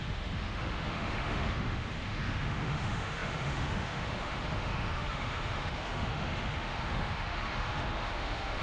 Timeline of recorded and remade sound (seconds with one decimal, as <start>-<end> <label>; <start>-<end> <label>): 0.0-8.6 remade

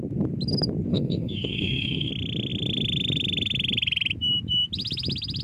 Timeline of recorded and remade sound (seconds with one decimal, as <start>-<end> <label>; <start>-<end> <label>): 0.0-0.9 recorded; 0.9-2.1 remade; 2.1-5.4 recorded

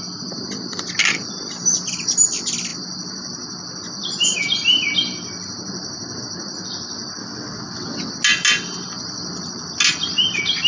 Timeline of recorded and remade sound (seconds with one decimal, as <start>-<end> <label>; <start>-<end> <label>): 0.0-7.2 recorded; 7.2-8.1 remade; 8.1-10.7 recorded

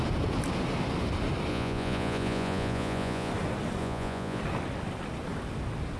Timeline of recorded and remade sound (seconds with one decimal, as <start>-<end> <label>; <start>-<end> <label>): 0.0-1.5 recorded; 1.5-3.3 remade; 3.3-3.8 recorded; 3.8-4.4 remade; 4.4-6.0 recorded

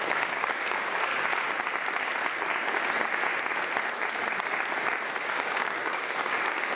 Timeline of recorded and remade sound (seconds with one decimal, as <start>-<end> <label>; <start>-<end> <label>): 0.0-1.1 remade; 1.1-5.2 recorded; 5.2-6.8 remade

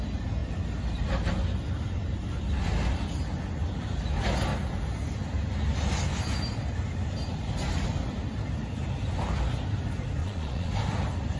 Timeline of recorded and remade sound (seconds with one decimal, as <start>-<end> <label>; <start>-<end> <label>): 0.0-10.2 recorded; 10.2-10.7 remade; 10.7-11.4 recorded

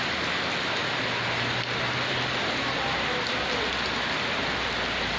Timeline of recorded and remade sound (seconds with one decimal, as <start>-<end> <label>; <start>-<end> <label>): 0.0-5.2 recorded